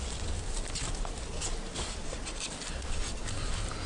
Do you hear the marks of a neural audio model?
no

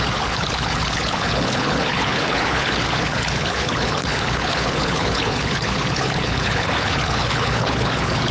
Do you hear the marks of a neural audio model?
yes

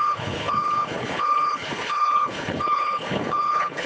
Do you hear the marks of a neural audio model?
yes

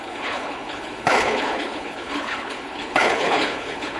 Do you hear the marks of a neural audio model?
yes